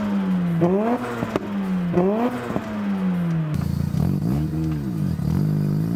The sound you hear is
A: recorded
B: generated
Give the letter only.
A